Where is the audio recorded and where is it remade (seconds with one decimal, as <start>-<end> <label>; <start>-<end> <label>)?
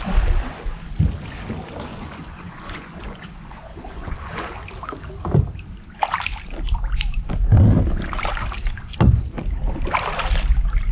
0.0-1.9 recorded; 1.9-4.5 remade; 4.5-10.9 recorded